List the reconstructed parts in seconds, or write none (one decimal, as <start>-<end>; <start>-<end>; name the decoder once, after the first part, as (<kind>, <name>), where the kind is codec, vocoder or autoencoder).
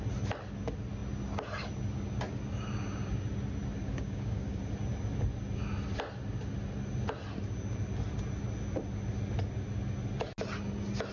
3.9-4.6 (codec, DAC)